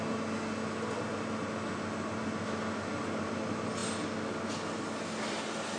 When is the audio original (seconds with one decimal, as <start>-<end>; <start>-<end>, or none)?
0.0-5.8